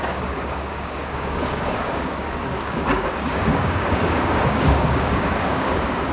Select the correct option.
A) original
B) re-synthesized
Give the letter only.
B